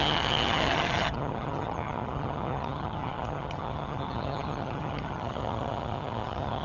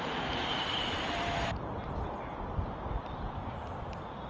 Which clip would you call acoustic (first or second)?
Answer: second